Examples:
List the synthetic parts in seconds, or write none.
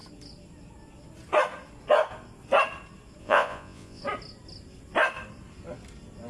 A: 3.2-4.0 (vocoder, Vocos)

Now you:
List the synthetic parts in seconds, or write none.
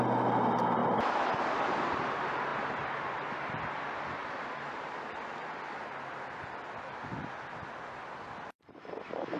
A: 0.8-1.6 (vocoder, BigVGAN v2)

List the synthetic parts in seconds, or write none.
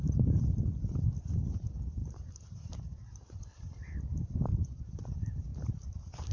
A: 2.0-3.4 (vocoder, BigVGAN v2); 4.5-5.0; 5.5-6.3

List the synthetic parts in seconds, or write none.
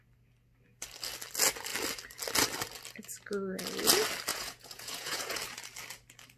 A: 4.3-5.4 (vocoder, Vocos)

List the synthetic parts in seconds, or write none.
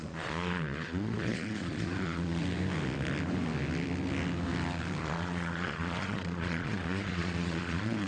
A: 0.0-2.4 (vocoder, Vocos); 5.0-8.1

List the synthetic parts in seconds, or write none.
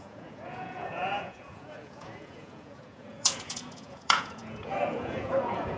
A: 0.0-5.8 (vocoder, Vocos)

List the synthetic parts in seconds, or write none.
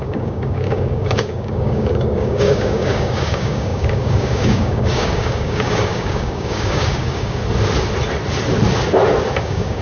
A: 0.0-7.4 (codec, DAC); 9.4-9.8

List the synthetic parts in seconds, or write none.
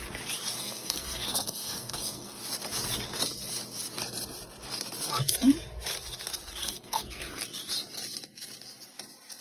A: 0.6-2.4 (codec, SNAC); 6.6-7.4